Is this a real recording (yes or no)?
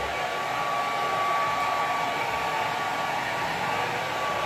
yes